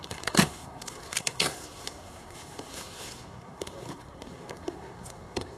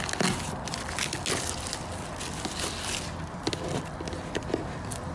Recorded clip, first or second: second